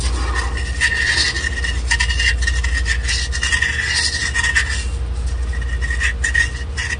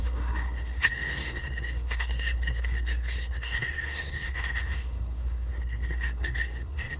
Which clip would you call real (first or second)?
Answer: first